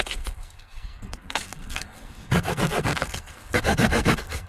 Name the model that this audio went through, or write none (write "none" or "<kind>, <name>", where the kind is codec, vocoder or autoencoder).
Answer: codec, SNAC